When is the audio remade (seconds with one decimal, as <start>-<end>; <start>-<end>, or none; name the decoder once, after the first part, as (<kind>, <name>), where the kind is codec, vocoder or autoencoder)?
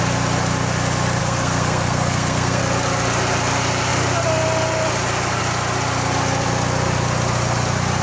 1.2-2.6 (codec, SNAC)